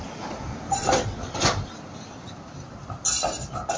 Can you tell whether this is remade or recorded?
recorded